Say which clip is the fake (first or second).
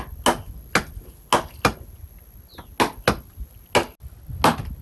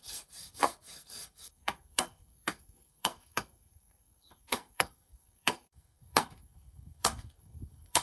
second